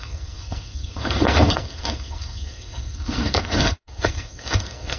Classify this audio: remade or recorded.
remade